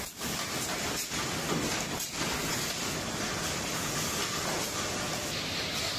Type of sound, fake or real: real